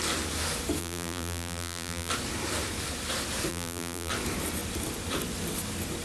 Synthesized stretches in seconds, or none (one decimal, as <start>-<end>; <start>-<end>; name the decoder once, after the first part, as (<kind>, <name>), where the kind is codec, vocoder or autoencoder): 0.8-2.1 (vocoder, BigVGAN v2); 3.5-4.1

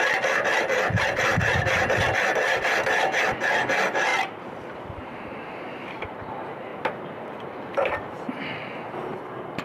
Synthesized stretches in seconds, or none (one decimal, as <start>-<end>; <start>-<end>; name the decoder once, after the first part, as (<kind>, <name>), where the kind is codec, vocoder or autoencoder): 1.3-1.9 (vocoder, BigVGAN v2); 4.1-6.3; 6.7-8.3

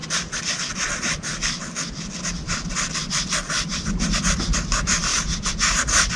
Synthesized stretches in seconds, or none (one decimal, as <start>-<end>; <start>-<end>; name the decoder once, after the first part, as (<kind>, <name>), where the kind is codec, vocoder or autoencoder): 0.0-5.1 (vocoder, BigVGAN v2)

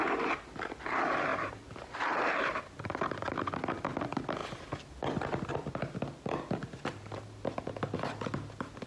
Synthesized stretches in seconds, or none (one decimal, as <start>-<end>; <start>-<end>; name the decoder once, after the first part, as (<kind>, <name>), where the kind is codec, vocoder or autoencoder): 1.3-2.3 (vocoder, BigVGAN v2)

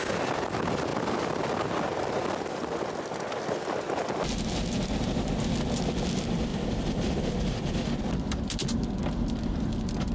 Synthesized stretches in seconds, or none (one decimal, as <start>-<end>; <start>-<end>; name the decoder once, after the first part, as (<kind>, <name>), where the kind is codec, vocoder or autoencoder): none

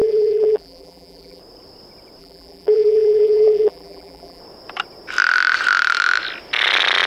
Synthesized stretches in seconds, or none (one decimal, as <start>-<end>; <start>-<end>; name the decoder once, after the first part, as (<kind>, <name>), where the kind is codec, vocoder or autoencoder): 0.0-1.4 (vocoder, BigVGAN v2); 2.2-4.4

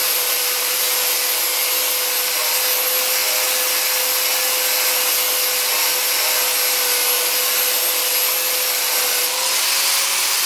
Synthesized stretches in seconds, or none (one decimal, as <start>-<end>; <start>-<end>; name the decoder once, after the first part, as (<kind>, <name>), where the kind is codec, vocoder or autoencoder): 0.0-0.8 (vocoder, BigVGAN v2)